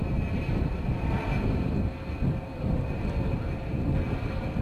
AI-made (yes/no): no